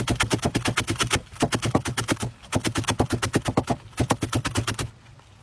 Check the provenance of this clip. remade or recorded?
recorded